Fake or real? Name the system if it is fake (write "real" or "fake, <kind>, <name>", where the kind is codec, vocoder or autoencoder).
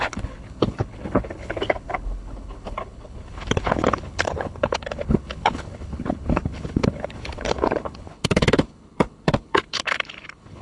fake, codec, HILCodec